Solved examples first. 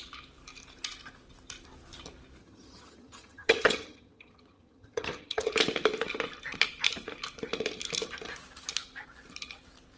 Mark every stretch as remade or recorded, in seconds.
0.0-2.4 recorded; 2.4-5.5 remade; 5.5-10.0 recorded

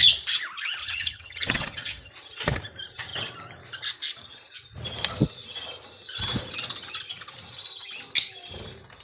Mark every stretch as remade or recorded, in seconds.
0.0-0.8 recorded; 0.8-2.1 remade; 2.1-9.0 recorded

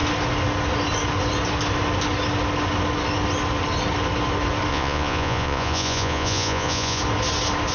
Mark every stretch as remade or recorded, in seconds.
0.0-4.7 recorded; 4.7-7.0 remade; 7.0-7.7 recorded

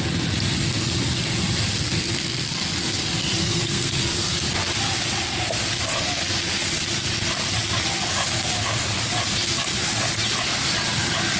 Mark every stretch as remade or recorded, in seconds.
0.0-3.4 recorded; 3.4-3.9 remade; 3.9-11.4 recorded

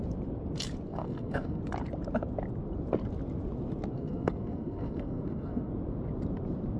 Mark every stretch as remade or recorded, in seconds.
0.0-0.9 recorded; 0.9-1.6 remade; 1.6-3.9 recorded; 3.9-5.7 remade; 5.7-6.8 recorded